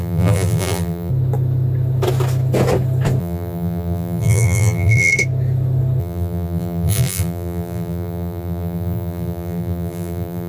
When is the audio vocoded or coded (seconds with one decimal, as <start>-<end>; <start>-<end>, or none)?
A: 0.0-1.1; 3.2-5.1; 6.0-10.5